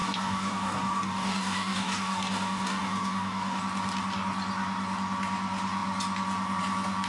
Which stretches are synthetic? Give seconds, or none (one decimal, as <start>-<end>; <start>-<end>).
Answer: 0.0-3.6